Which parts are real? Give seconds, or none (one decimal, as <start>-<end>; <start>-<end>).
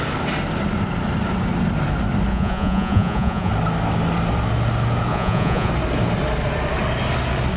0.0-2.3; 3.5-5.1; 5.7-7.6